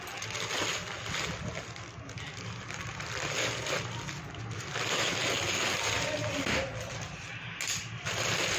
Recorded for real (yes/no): yes